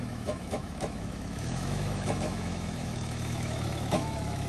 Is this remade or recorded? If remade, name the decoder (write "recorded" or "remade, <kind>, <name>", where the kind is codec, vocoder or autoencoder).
remade, autoencoder, DAC-VAE